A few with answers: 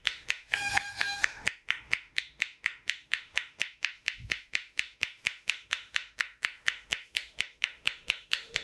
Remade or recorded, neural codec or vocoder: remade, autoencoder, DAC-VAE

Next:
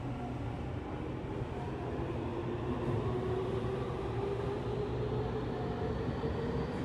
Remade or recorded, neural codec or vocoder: recorded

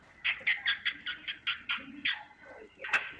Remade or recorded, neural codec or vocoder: recorded